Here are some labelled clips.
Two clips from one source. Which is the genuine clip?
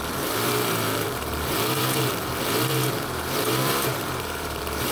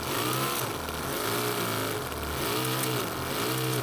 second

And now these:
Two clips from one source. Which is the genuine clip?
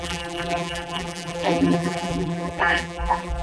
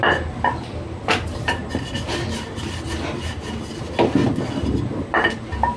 second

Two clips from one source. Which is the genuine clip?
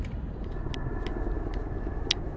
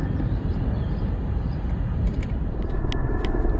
first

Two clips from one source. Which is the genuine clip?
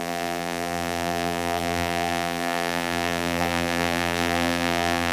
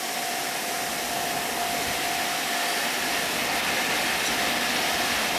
second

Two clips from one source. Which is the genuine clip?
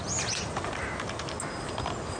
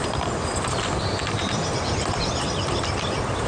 first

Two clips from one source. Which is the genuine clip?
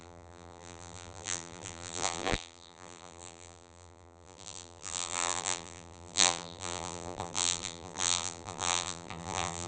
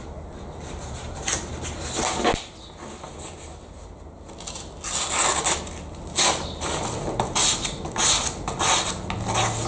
second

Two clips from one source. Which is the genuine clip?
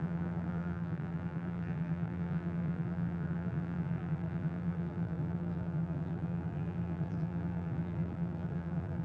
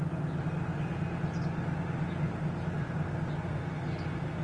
second